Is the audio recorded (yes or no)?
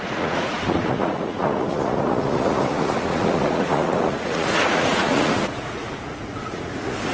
no